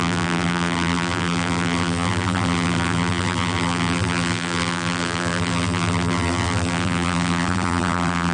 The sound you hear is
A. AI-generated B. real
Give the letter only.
A